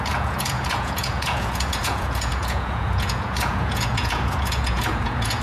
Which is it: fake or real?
fake